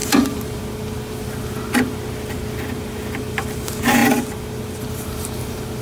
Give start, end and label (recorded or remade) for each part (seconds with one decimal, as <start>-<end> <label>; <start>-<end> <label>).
0.0-0.6 remade; 0.6-5.8 recorded